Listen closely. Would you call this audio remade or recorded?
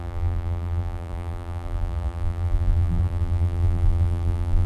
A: remade